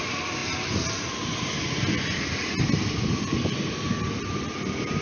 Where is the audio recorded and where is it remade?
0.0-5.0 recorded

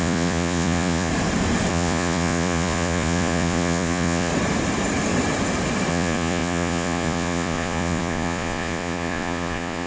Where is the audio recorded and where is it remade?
0.0-1.1 remade; 1.1-1.7 recorded; 1.7-4.3 remade; 4.3-5.9 recorded; 5.9-9.9 remade

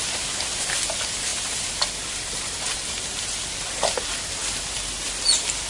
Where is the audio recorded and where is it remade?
0.0-5.7 recorded

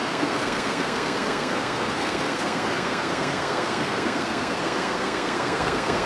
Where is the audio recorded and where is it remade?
0.0-6.1 remade